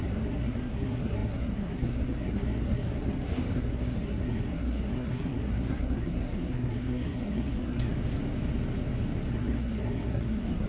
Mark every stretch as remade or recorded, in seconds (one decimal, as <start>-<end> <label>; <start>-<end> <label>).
0.0-7.9 remade; 7.9-9.3 recorded; 9.3-10.7 remade